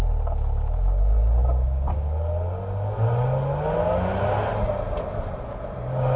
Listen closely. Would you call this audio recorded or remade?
recorded